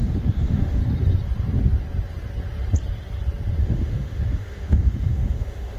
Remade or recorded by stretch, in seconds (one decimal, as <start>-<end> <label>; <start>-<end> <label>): 0.0-0.8 remade; 0.8-3.6 recorded; 3.6-5.8 remade